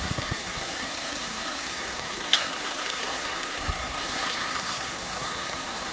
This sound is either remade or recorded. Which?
remade